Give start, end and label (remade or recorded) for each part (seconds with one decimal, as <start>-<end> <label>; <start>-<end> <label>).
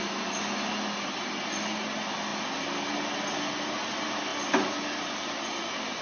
0.0-6.0 recorded